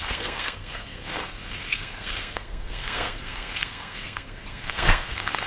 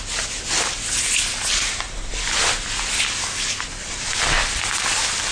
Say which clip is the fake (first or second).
first